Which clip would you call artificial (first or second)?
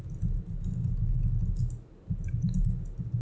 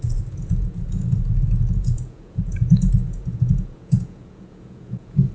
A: second